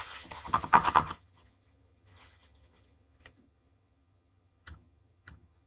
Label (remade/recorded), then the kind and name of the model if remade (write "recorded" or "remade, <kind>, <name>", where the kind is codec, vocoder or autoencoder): remade, vocoder, HiFi-GAN